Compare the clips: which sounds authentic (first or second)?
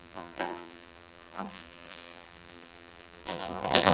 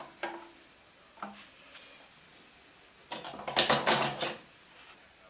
second